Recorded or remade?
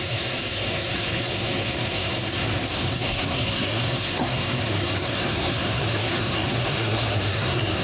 remade